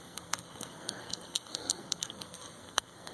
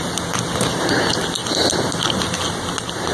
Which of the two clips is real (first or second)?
second